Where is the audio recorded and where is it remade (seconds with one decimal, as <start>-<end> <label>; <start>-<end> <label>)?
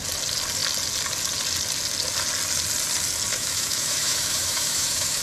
0.0-3.3 recorded; 3.3-5.2 remade